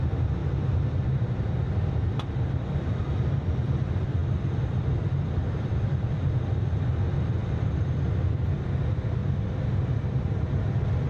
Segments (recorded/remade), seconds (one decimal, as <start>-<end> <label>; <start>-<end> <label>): 0.0-9.2 remade; 9.2-9.7 recorded; 9.7-11.1 remade